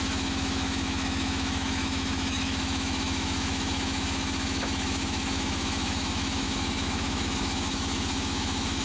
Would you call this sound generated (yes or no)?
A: yes